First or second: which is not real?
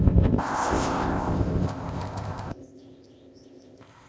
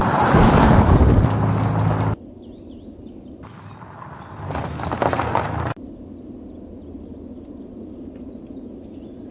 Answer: first